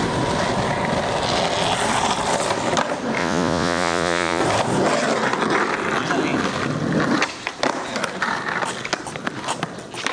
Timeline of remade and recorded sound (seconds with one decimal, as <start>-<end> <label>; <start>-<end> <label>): 0.0-3.2 recorded; 3.2-4.4 remade; 4.4-10.1 recorded